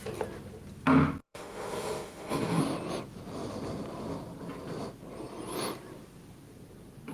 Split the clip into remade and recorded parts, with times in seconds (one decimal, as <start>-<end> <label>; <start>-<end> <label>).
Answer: 0.0-1.2 recorded; 1.2-2.6 remade; 2.6-7.1 recorded